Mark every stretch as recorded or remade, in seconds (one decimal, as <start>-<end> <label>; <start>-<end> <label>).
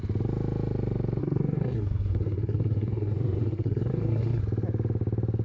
0.0-1.2 recorded; 1.2-4.4 remade; 4.4-5.4 recorded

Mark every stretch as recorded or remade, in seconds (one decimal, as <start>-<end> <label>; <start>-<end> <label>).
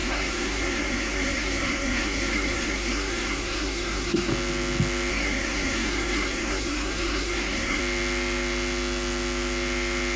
0.0-4.3 remade; 4.3-5.1 recorded; 5.1-7.8 remade; 7.8-10.2 recorded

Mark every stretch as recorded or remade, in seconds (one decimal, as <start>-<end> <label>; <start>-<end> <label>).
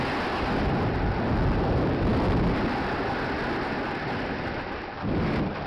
0.0-5.7 recorded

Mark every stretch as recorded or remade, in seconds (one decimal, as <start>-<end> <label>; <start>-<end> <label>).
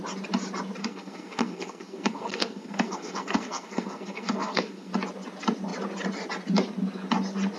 0.0-0.8 recorded; 0.8-4.9 remade; 4.9-7.6 recorded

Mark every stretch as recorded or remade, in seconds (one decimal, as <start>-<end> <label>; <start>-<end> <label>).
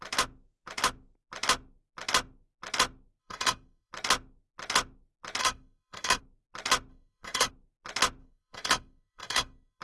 0.0-3.2 recorded; 3.2-3.9 remade; 3.9-5.4 recorded; 5.4-6.2 remade; 6.2-6.9 recorded; 6.9-7.5 remade; 7.5-8.2 recorded; 8.2-9.8 remade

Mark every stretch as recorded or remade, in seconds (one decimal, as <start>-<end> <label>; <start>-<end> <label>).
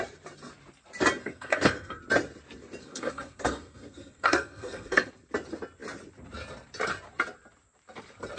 0.0-1.2 recorded; 1.2-2.0 remade; 2.0-2.8 recorded; 2.8-5.1 remade; 5.1-8.4 recorded